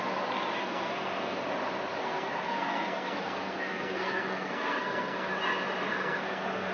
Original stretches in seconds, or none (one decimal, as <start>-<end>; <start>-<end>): 0.0-0.6; 1.4-2.0; 5.3-5.9